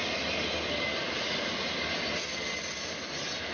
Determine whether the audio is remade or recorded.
recorded